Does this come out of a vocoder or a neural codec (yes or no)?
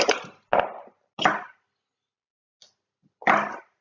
no